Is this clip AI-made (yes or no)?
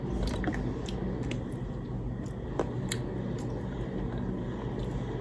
no